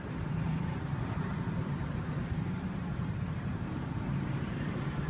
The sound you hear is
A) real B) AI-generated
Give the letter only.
B